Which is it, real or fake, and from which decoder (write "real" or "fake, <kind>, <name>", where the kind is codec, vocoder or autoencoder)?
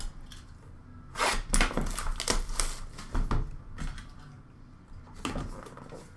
real